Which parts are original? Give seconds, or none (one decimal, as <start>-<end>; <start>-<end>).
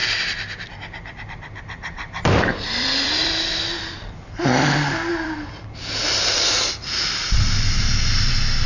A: 4.3-5.1; 6.5-8.7